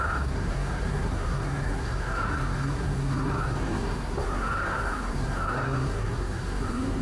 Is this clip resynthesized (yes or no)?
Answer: yes